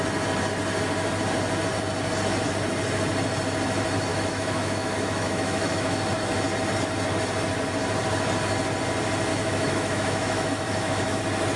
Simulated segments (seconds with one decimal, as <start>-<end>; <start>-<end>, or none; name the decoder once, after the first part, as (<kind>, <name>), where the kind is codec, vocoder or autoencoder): 4.1-6.0 (autoencoder, DAC-VAE); 9.3-11.2